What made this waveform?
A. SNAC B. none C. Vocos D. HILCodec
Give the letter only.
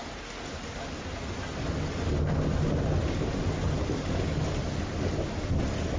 B